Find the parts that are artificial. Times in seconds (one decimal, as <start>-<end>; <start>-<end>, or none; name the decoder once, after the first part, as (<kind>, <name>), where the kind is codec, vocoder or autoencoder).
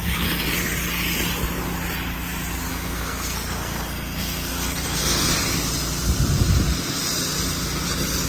2.7-5.3 (codec, SNAC)